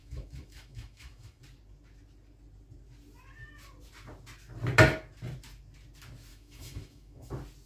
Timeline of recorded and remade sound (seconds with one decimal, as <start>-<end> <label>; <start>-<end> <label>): 0.0-1.4 remade; 1.4-6.3 recorded; 6.3-7.3 remade; 7.3-7.7 recorded